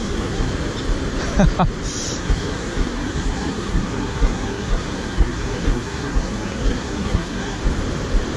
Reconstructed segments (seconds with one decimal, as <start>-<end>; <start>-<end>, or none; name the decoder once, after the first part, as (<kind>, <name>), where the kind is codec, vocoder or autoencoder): 0.0-0.5 (codec, SNAC); 2.2-7.6

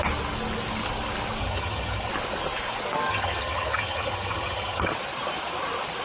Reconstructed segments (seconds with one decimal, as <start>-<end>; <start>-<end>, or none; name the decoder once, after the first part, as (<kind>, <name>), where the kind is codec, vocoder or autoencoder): 1.4-2.1 (vocoder, HiFi-GAN); 3.1-4.9

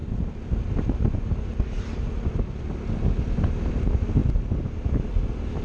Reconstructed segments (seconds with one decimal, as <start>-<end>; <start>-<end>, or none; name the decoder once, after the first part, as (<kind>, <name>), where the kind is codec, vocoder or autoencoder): 0.0-0.7 (vocoder, BigVGAN v2); 1.5-3.7

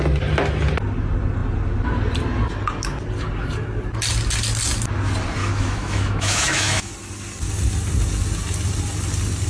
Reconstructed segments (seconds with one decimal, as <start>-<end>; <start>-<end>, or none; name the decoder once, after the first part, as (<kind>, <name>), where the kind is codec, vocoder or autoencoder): 5.4-6.9 (autoencoder, DAC-VAE)

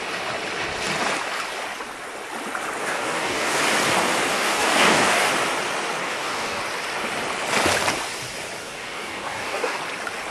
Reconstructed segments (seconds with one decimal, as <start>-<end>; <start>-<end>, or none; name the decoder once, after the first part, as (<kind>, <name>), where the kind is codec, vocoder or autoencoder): 2.8-3.6 (codec, DAC); 4.3-5.3; 6.0-6.6; 8.6-9.8

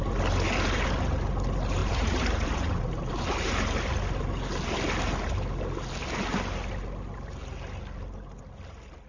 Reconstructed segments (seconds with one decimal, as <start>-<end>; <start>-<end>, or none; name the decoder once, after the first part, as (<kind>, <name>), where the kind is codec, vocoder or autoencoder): 1.8-3.1 (vocoder, BigVGAN v2)

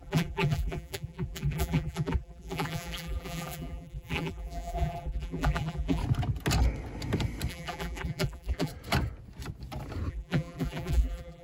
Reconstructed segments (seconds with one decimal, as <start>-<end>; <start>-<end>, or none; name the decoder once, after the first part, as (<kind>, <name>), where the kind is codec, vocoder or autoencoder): 0.0-6.0 (vocoder, BigVGAN v2); 7.5-8.7; 10.1-11.4

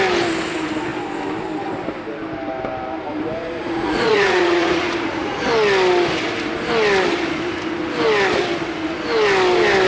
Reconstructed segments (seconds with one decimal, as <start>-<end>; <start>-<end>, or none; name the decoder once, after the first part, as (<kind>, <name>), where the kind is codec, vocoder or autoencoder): 3.6-5.4 (vocoder, Vocos)